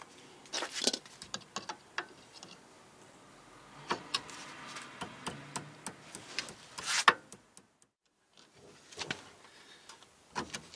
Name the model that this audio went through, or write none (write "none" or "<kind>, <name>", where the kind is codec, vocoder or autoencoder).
none